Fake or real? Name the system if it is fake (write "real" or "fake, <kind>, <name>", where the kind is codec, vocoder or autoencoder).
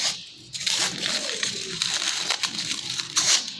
fake, vocoder, BigVGAN v2